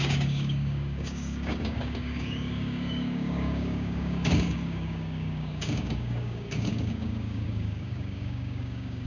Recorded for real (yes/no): no